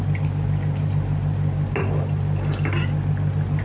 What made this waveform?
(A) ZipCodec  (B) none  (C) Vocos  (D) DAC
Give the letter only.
B